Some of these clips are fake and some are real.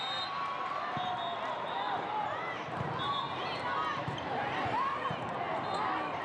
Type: real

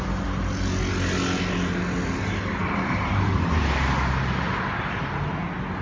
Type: real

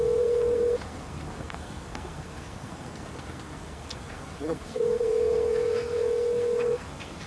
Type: fake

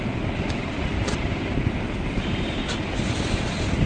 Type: real